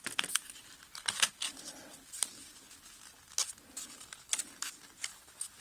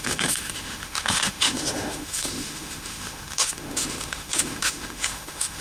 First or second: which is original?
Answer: first